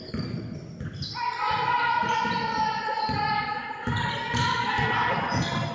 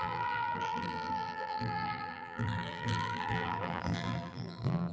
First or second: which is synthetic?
second